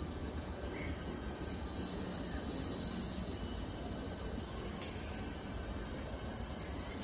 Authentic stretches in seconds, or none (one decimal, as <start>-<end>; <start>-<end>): 2.1-2.8; 3.2-7.0